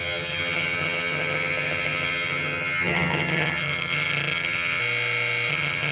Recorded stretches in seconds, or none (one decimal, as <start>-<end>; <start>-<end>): 4.8-5.5